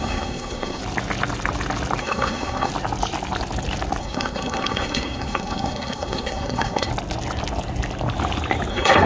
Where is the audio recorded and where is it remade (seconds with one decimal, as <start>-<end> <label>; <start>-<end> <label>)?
0.0-0.8 remade; 0.8-2.0 recorded; 2.0-2.7 remade; 2.7-4.0 recorded; 4.0-6.9 remade; 6.9-8.7 recorded; 8.7-9.1 remade